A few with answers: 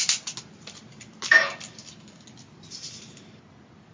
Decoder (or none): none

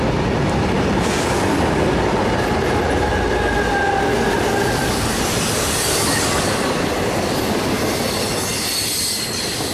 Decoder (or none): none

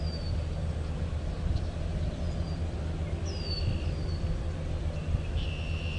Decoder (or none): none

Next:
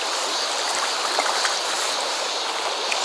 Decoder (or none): none